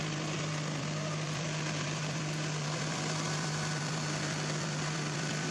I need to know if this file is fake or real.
fake